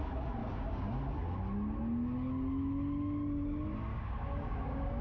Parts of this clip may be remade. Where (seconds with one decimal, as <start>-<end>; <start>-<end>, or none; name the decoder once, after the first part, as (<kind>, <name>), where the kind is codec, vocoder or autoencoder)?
0.4-0.9 (codec, DAC); 3.9-5.0